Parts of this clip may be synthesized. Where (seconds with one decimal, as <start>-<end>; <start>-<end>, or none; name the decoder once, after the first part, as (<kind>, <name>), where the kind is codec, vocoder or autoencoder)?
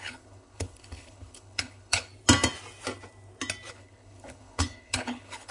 0.0-2.1 (codec, HILCodec); 3.7-5.5